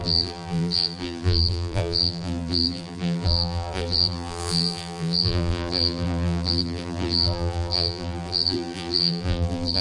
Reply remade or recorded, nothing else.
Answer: remade